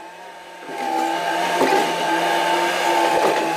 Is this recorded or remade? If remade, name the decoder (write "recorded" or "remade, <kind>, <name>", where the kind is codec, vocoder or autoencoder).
recorded